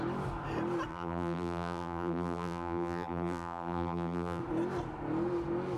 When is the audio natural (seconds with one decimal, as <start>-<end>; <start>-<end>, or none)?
0.0-0.9; 4.4-5.8